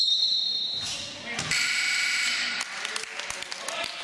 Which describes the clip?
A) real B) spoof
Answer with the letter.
A